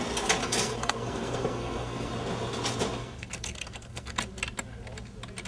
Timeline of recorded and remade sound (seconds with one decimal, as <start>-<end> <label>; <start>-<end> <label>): 0.0-0.4 recorded; 0.4-2.1 remade; 2.1-3.0 recorded; 3.0-4.2 remade; 4.2-5.5 recorded